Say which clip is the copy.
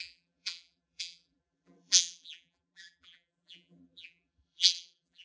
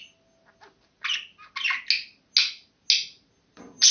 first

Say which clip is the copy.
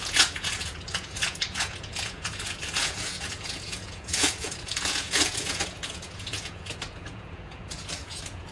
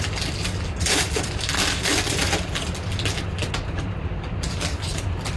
first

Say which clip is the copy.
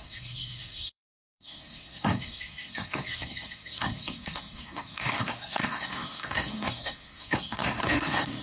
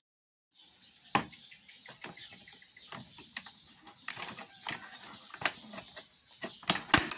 first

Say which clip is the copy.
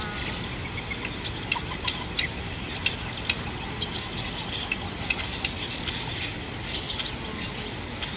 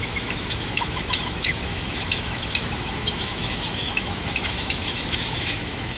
second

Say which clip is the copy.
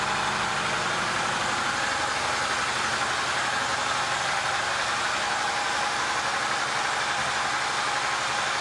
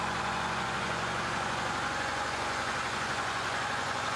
second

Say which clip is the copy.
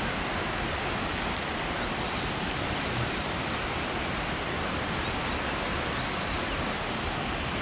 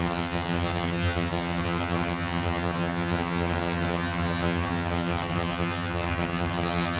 second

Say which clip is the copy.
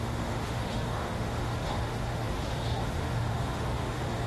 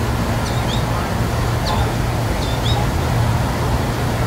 first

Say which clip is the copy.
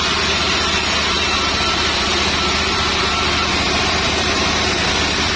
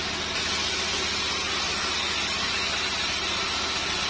first